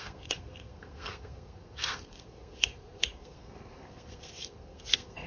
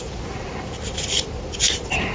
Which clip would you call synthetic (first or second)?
first